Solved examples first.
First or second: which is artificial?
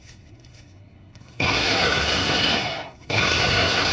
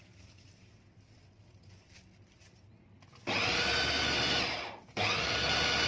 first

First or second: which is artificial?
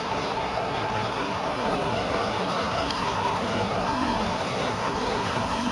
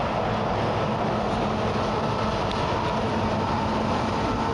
first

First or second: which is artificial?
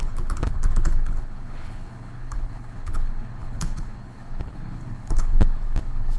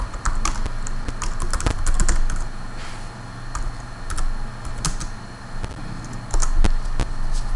first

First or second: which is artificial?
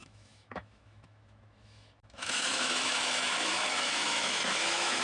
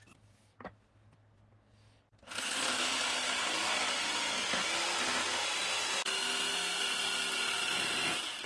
first